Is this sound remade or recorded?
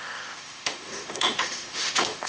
remade